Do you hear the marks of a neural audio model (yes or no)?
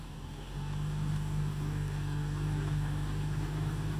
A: yes